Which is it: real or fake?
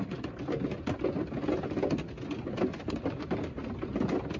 real